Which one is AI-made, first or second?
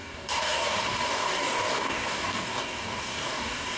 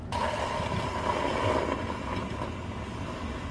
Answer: first